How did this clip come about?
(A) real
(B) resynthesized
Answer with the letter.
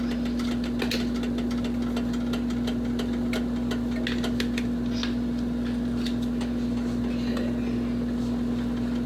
A